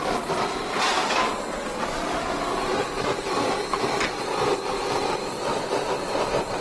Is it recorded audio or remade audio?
recorded